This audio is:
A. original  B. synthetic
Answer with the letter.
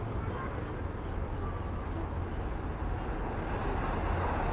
A